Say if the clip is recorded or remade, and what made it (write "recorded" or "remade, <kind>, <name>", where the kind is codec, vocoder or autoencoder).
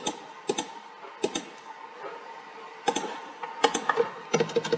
recorded